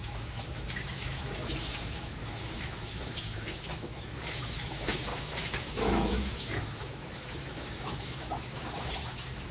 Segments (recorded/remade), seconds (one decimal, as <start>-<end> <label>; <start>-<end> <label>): 0.0-9.5 remade